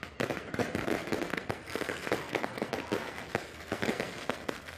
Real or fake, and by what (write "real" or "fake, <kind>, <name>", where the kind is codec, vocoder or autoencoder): fake, codec, SNAC